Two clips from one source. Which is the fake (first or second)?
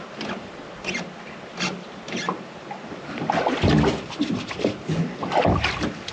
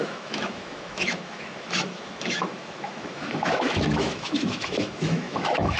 second